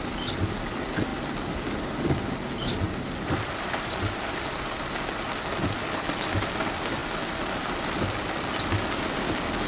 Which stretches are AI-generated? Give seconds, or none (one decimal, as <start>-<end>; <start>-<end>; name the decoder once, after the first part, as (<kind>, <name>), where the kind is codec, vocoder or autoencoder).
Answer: none